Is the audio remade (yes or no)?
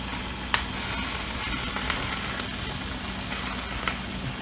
no